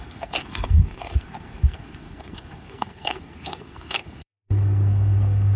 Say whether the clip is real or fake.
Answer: fake